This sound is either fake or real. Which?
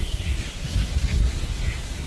fake